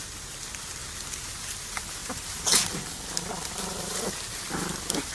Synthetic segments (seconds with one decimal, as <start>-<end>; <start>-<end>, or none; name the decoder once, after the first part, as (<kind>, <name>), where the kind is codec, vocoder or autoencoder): none